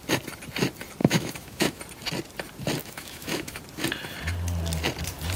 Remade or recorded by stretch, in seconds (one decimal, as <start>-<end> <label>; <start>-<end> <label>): 0.0-1.0 recorded; 1.0-1.8 remade; 1.8-2.8 recorded; 2.8-3.6 remade; 3.6-5.4 recorded